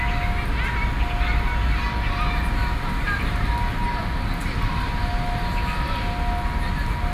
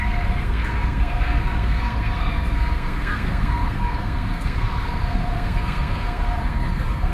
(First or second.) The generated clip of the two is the second